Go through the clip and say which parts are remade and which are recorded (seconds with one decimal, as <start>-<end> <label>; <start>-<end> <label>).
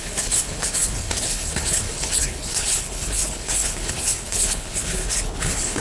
0.0-5.8 remade